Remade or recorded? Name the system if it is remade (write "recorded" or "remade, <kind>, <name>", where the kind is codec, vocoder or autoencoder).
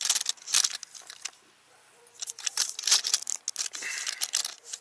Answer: recorded